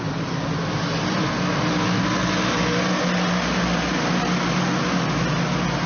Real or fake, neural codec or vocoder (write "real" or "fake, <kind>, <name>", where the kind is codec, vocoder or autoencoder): real